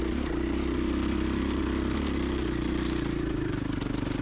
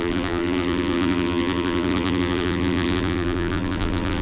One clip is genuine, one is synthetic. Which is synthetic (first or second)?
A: second